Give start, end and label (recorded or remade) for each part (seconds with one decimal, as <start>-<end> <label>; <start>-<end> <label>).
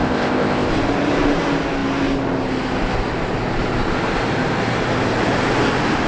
0.0-0.7 remade; 0.7-6.1 recorded